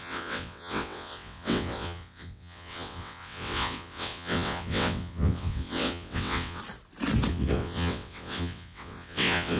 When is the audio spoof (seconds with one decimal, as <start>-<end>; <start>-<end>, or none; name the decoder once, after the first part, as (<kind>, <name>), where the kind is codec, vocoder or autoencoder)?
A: 0.0-6.6 (vocoder, WaveNeXt); 7.3-9.6